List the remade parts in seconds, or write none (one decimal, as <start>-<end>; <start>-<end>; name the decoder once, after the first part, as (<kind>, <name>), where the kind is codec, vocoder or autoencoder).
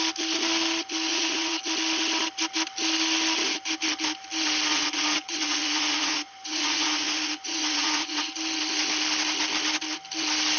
1.1-1.6 (vocoder, Vocos); 4.7-8.3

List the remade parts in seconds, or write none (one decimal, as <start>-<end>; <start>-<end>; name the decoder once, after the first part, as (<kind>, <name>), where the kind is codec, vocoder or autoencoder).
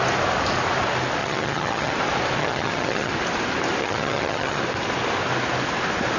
1.2-1.9 (vocoder, HiFi-GAN); 2.4-3.1; 3.8-4.6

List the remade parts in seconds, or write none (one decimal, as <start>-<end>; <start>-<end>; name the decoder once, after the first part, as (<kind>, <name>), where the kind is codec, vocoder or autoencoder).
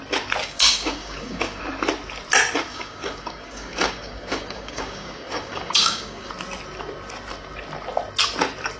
0.4-1.6 (codec, DAC); 2.7-6.3